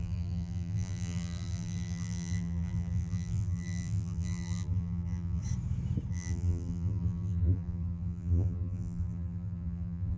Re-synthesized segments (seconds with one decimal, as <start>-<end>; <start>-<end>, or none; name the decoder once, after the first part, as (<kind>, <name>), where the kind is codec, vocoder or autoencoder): 0.0-5.4 (vocoder, BigVGAN v2); 6.1-10.2